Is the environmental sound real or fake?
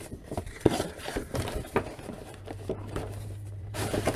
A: fake